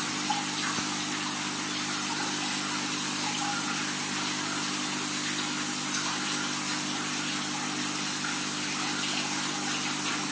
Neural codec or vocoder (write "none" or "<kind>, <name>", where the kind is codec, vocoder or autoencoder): none